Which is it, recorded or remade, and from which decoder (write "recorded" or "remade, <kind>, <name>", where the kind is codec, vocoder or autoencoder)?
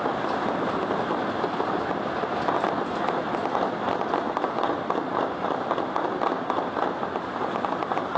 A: recorded